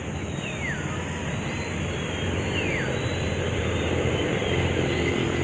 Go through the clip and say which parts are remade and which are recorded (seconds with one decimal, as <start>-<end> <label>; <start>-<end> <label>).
0.0-3.1 recorded; 3.1-5.4 remade